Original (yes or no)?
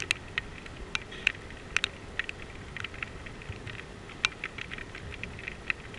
yes